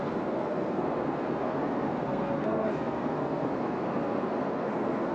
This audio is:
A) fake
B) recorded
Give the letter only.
A